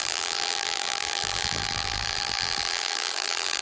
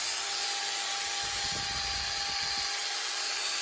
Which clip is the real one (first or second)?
second